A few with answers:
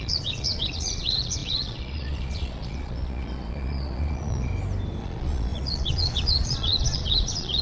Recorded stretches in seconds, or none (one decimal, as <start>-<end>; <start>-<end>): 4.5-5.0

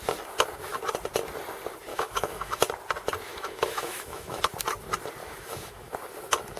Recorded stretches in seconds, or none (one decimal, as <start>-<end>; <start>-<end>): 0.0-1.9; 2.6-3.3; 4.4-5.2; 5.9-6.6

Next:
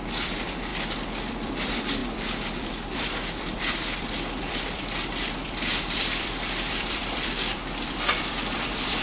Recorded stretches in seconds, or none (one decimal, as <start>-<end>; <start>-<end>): 0.7-1.3

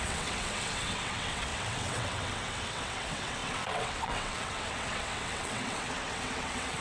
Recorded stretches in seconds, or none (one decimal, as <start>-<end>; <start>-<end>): none